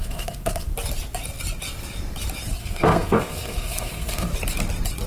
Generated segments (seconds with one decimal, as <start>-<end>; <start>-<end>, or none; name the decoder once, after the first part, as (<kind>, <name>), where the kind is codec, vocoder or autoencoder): 0.0-0.7 (codec, SNAC); 2.6-4.3